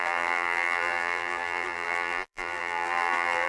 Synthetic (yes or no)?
yes